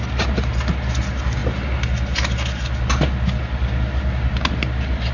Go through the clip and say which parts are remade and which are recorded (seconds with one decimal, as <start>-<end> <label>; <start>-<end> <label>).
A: 0.0-5.1 recorded